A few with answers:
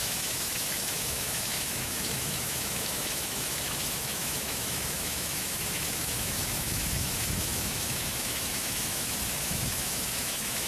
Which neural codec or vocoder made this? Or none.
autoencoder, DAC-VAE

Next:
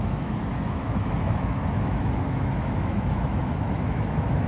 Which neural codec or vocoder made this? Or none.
autoencoder, DAC-VAE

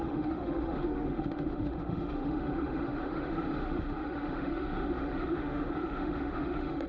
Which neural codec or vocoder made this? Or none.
autoencoder, DAC-VAE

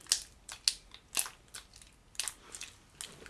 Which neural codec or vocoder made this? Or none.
none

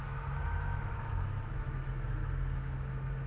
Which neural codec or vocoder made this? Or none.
autoencoder, DAC-VAE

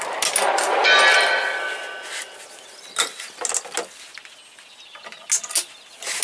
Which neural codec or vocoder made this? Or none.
none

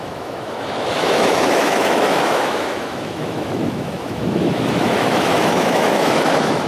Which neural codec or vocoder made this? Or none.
autoencoder, DAC-VAE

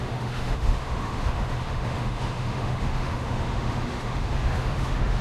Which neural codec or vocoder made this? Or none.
autoencoder, DAC-VAE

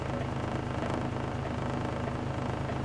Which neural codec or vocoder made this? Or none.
none